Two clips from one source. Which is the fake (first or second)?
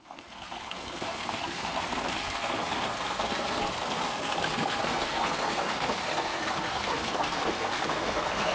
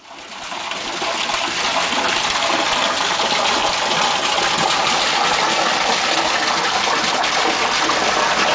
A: first